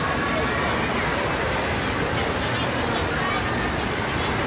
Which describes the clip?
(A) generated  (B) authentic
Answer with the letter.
B